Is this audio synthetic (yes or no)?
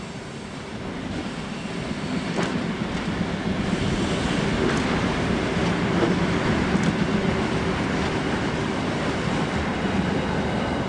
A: no